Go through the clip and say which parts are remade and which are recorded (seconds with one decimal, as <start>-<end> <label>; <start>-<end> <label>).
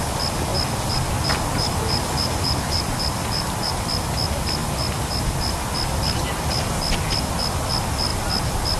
0.0-0.5 recorded; 0.5-3.7 remade; 3.7-8.8 recorded